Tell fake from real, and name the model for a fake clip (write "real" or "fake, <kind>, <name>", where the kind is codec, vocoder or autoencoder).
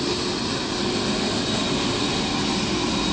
real